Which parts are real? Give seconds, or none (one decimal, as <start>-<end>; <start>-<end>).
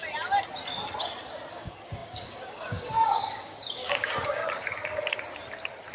0.0-1.5; 4.4-5.9